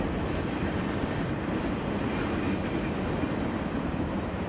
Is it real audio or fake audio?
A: fake